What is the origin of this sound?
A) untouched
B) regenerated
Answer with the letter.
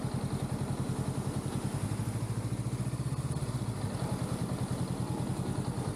A